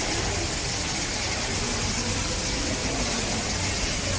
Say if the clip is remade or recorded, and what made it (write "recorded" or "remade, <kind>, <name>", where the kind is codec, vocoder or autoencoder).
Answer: recorded